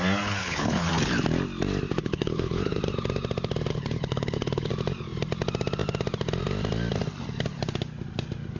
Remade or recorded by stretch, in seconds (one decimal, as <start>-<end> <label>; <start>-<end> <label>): 0.0-0.4 recorded; 0.4-0.9 remade; 0.9-2.0 recorded; 2.0-2.8 remade; 2.8-3.7 recorded; 3.7-4.7 remade; 4.7-8.6 recorded